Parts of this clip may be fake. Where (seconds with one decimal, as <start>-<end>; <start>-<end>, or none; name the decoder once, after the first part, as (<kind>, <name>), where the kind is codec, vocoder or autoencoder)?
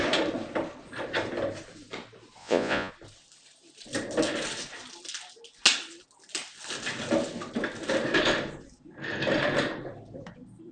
2.4-2.9 (vocoder, Vocos)